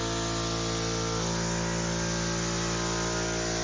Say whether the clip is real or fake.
real